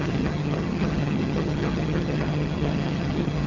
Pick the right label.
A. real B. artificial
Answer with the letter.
B